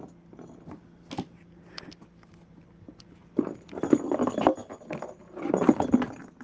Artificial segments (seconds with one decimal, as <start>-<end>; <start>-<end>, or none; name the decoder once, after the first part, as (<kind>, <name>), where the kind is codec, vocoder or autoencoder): none